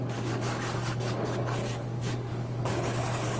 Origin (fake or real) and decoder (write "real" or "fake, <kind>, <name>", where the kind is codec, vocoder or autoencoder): fake, codec, DAC